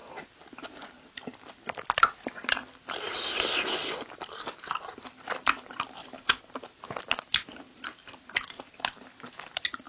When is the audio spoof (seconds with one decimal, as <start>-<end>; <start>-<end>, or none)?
6.0-6.5